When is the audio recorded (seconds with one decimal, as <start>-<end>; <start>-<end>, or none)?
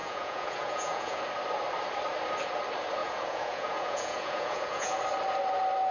1.2-3.0; 5.0-5.9